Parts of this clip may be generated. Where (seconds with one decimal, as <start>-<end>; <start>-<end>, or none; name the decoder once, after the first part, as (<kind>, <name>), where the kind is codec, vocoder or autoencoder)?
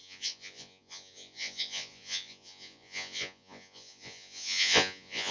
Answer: 0.0-5.3 (vocoder, Vocos)